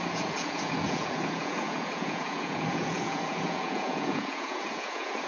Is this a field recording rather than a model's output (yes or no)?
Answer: no